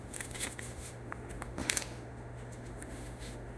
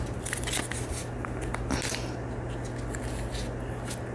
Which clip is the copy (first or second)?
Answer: first